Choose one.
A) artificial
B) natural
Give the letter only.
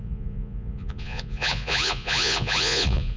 A